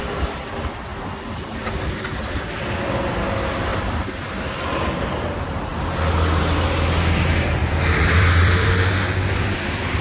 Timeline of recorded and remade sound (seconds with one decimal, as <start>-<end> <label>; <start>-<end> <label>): 0.0-3.7 recorded; 3.7-4.6 remade; 4.6-7.6 recorded; 7.6-8.9 remade; 8.9-10.0 recorded